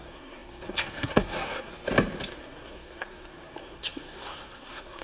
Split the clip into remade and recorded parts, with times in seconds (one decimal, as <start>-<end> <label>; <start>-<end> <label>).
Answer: 0.0-1.7 remade; 1.7-2.3 recorded; 2.3-5.0 remade